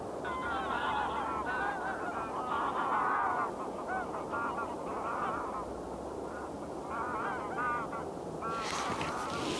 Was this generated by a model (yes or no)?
no